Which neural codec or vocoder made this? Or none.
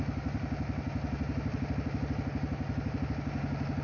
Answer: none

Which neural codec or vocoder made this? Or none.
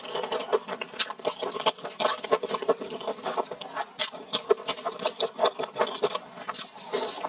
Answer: none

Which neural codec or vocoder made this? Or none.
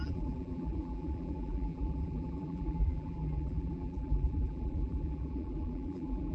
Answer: vocoder, BigVGAN v2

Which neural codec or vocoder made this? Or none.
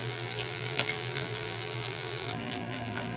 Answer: vocoder, BigVGAN v2